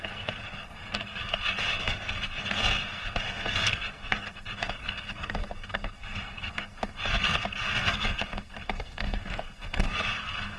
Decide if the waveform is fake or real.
fake